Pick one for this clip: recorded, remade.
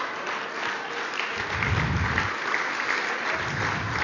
recorded